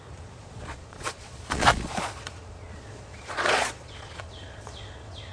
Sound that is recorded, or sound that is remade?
remade